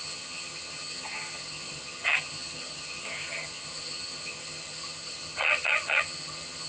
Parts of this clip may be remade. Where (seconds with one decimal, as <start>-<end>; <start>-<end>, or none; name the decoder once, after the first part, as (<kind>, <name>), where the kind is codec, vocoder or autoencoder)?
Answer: 0.0-6.7 (vocoder, HiFi-GAN)